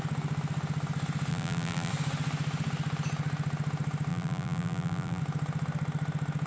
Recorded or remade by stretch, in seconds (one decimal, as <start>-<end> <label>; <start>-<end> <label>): 0.0-1.3 recorded; 1.3-1.9 remade; 1.9-4.1 recorded; 4.1-5.2 remade; 5.2-6.5 recorded